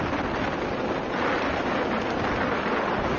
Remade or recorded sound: recorded